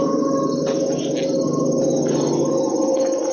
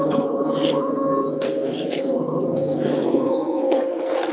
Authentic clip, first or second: first